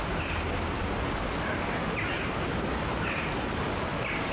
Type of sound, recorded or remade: recorded